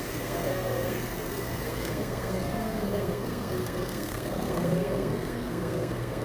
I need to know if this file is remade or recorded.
remade